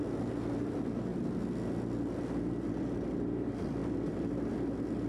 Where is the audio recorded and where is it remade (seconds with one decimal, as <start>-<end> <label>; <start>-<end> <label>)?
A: 0.0-5.1 recorded